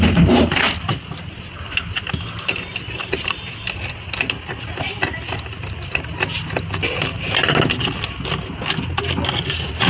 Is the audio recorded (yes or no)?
yes